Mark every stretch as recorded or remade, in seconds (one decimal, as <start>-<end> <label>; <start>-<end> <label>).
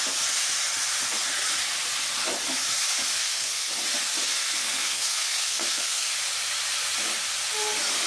0.0-3.1 recorded; 3.1-3.7 remade; 3.7-4.3 recorded; 4.3-6.1 remade; 6.1-8.1 recorded